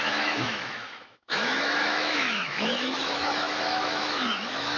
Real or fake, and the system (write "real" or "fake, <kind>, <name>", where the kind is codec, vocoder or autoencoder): fake, autoencoder, DAC-VAE